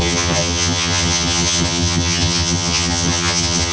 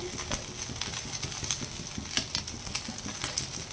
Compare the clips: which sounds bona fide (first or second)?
second